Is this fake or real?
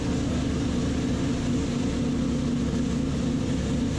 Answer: real